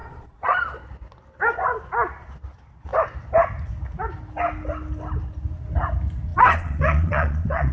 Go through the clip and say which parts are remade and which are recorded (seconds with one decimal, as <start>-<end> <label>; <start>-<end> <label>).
0.0-0.8 remade; 0.8-6.3 recorded; 6.3-7.7 remade